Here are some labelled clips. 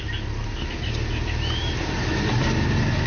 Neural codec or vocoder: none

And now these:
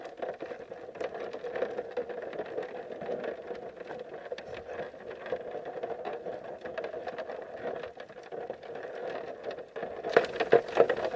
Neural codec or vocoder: none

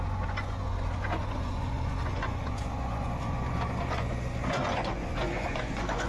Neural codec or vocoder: vocoder, Vocos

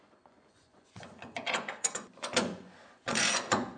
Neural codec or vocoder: vocoder, Vocos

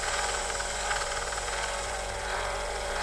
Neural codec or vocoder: vocoder, Vocos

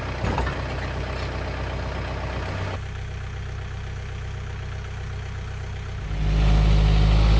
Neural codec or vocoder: none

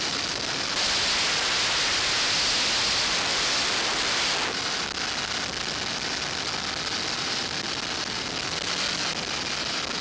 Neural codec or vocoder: none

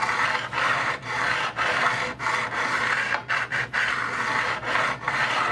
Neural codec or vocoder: none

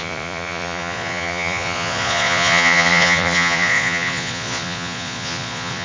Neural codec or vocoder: vocoder, Vocos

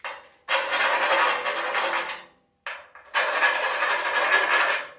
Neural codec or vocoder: none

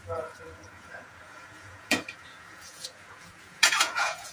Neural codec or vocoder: vocoder, Vocos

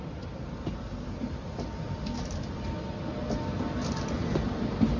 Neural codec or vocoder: none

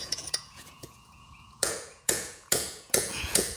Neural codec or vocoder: vocoder, Vocos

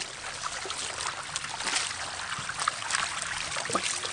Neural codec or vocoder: none